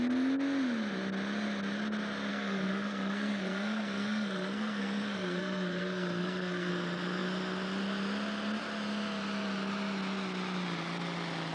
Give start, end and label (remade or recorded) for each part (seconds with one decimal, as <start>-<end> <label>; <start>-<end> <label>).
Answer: 0.0-2.3 recorded; 2.3-6.7 remade; 6.7-11.5 recorded